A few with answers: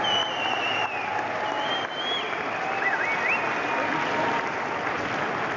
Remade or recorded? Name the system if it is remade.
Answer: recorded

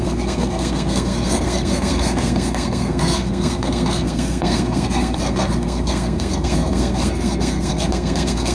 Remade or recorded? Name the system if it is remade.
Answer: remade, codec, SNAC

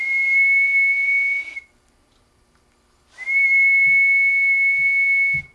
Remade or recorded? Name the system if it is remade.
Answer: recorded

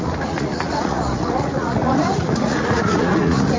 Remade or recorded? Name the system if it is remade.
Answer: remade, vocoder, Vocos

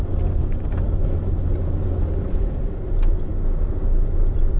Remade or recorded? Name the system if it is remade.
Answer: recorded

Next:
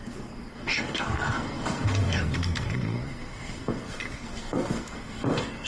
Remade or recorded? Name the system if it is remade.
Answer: remade, codec, SNAC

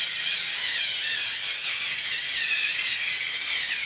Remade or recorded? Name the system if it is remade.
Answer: recorded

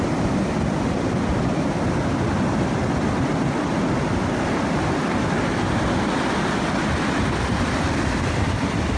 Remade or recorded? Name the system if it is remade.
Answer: recorded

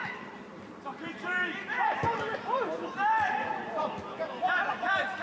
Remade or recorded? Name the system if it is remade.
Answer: remade, vocoder, BigVGAN v2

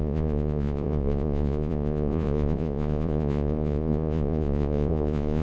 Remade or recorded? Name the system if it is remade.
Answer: remade, vocoder, Vocos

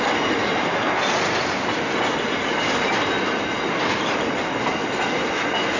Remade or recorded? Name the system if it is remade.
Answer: recorded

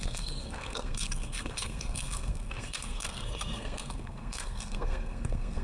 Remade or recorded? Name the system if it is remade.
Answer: remade, codec, SNAC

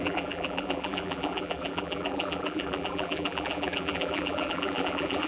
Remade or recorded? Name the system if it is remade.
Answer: remade, vocoder, BigVGAN v2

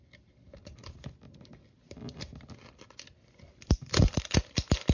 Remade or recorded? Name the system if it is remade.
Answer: recorded